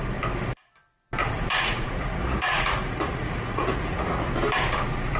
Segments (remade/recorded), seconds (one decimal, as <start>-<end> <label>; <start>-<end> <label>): 0.0-1.2 recorded; 1.2-4.3 remade; 4.3-5.2 recorded

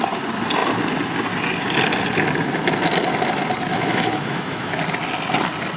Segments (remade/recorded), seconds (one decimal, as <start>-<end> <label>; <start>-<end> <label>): 0.0-3.7 recorded; 3.7-4.7 remade; 4.7-5.8 recorded